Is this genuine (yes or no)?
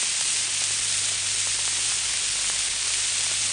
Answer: yes